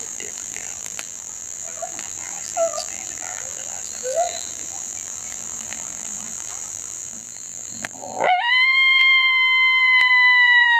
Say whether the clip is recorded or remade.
remade